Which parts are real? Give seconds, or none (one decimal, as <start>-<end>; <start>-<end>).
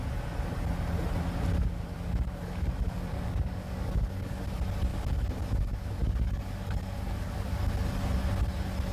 0.0-1.6; 4.4-4.9; 7.7-8.9